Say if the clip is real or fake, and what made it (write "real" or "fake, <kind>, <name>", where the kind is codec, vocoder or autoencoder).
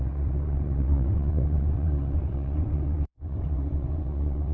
fake, vocoder, WaveNeXt